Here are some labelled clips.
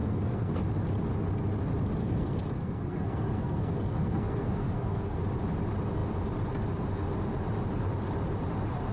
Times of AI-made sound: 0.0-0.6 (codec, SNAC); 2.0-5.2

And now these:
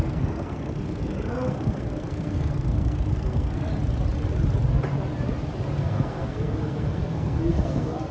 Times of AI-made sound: 0.0-3.7 (codec, SNAC); 5.8-8.1

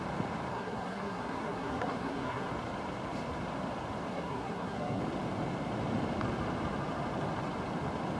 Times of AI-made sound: 0.5-2.5 (codec, SNAC); 4.1-5.0

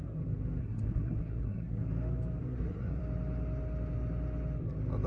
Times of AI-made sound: 0.6-1.8 (codec, SNAC); 2.4-3.0